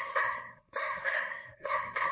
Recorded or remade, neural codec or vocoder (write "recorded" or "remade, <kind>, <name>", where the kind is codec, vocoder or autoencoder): remade, codec, SNAC